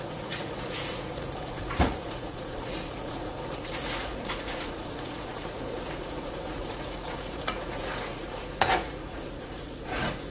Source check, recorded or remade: remade